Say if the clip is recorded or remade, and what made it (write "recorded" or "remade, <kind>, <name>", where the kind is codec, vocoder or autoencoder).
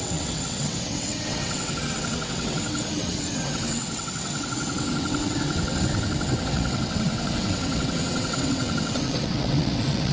remade, vocoder, WaveNeXt